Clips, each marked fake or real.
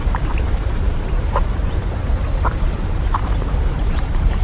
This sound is fake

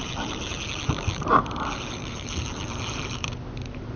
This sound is fake